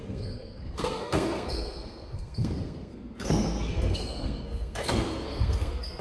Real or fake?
fake